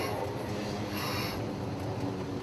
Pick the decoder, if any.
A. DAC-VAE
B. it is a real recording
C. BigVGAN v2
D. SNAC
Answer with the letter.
B